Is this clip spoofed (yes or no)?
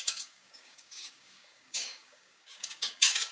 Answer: yes